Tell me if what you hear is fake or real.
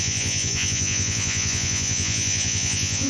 fake